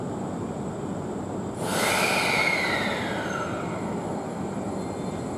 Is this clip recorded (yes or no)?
yes